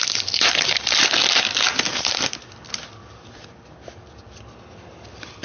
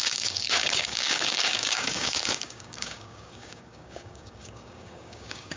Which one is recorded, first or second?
first